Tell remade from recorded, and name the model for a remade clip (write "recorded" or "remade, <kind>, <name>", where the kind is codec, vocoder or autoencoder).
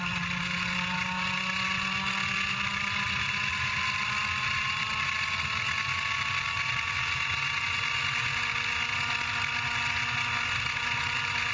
recorded